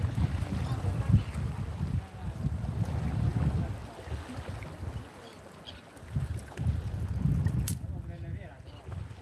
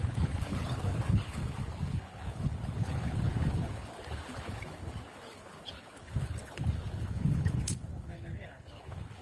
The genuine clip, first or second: first